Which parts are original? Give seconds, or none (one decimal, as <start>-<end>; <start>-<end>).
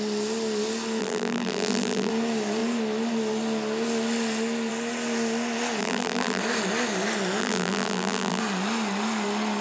0.0-1.0; 2.1-5.8; 6.4-7.4; 8.4-9.6